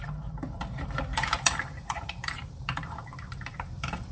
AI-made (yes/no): yes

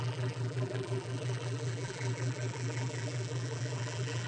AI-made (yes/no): yes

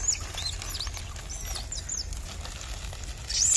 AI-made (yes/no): no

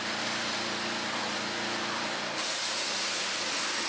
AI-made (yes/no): no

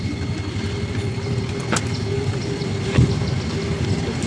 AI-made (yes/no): no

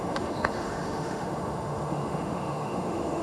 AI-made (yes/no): yes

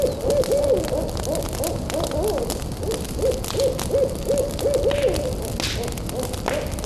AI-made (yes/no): no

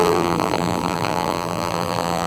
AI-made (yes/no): yes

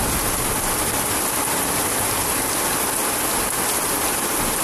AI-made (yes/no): no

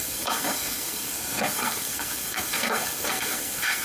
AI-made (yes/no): yes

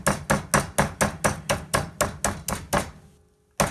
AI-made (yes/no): no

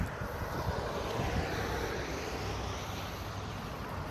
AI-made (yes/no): no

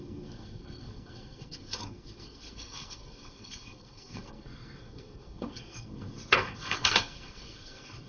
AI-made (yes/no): yes